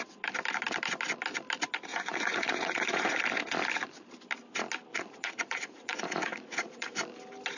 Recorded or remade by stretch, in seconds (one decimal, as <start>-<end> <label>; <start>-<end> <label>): 0.0-1.9 recorded; 1.9-3.2 remade; 3.2-4.9 recorded; 4.9-6.9 remade; 6.9-7.6 recorded

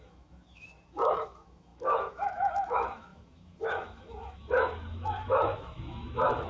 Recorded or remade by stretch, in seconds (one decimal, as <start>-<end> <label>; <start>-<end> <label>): 0.0-6.5 remade

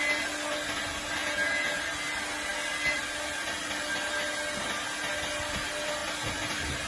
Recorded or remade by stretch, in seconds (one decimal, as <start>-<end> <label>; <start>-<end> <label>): 0.0-1.2 recorded; 1.2-1.8 remade; 1.8-6.9 recorded

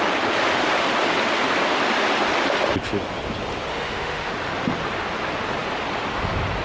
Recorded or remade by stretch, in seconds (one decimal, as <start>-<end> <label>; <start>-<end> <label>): 0.0-3.7 recorded; 3.7-4.3 remade; 4.3-6.6 recorded

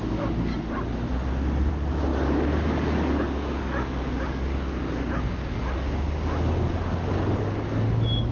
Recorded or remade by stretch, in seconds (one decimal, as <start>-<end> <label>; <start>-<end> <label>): 0.0-0.5 remade; 0.5-1.7 recorded; 1.7-8.3 remade

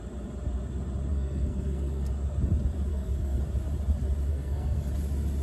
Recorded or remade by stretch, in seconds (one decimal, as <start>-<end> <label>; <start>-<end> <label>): 0.0-1.1 recorded; 1.1-2.1 remade; 2.1-2.9 recorded; 2.9-3.4 remade; 3.4-4.3 recorded; 4.3-4.9 remade; 4.9-5.4 recorded

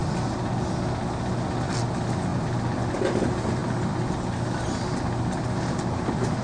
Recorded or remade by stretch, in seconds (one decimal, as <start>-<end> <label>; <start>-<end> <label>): 0.0-6.4 recorded

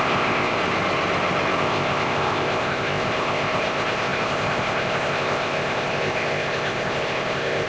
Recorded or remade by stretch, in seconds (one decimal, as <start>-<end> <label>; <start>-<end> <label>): 0.0-0.6 remade; 0.6-1.6 recorded; 1.6-7.7 remade